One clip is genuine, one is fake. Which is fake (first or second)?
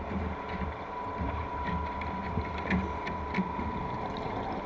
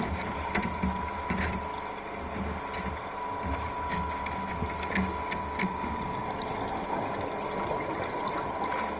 first